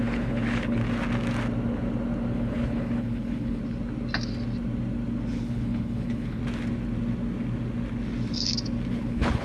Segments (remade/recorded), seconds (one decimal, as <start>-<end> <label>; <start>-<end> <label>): 0.0-0.8 remade; 0.8-2.3 recorded; 2.3-3.6 remade; 3.6-5.3 recorded; 5.3-6.4 remade; 6.4-8.9 recorded; 8.9-9.4 remade